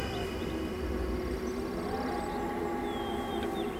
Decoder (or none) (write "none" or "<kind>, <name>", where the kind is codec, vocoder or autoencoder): none